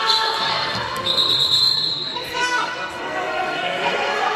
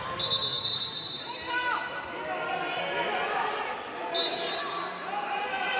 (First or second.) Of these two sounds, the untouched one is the second